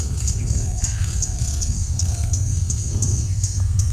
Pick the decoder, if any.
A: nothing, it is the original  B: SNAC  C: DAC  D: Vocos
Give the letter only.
B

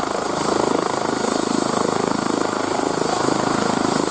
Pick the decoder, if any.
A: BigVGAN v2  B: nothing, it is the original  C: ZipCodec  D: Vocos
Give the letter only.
B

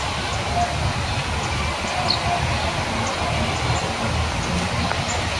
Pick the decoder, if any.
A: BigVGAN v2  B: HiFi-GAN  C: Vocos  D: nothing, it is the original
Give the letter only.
D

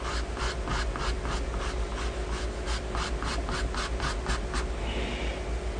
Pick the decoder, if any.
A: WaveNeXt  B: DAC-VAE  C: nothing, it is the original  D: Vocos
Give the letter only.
C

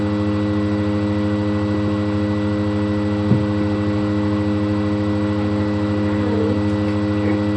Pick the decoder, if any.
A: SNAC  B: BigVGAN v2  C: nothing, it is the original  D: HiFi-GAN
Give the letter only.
C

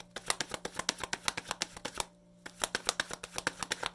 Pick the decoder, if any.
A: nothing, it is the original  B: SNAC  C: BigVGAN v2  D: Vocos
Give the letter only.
A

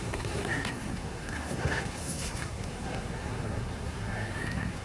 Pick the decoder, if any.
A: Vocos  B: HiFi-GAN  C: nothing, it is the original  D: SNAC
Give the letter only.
D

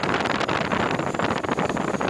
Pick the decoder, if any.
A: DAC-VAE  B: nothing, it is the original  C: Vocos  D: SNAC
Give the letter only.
B